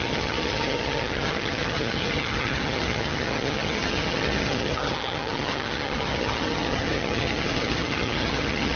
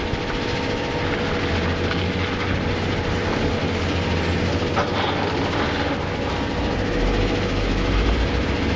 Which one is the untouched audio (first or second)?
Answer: second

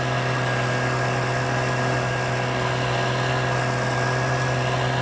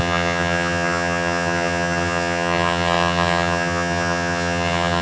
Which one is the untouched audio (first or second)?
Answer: first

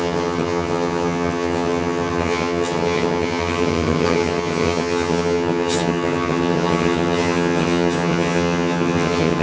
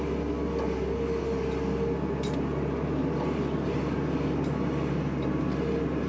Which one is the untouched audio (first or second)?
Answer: second